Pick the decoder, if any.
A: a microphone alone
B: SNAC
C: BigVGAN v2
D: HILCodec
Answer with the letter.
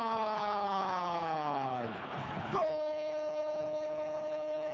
D